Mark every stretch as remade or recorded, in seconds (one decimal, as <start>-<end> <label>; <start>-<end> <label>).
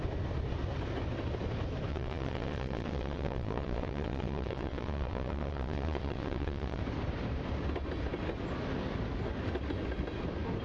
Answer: 0.0-1.9 recorded; 1.9-6.8 remade; 6.8-10.6 recorded